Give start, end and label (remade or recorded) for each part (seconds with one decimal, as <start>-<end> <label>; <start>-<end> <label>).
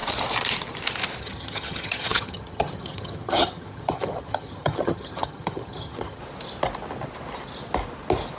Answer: 0.0-1.2 recorded; 1.2-6.2 remade; 6.2-8.4 recorded